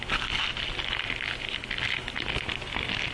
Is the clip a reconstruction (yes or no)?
no